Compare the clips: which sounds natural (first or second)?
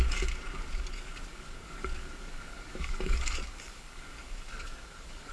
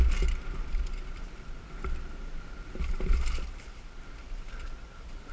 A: second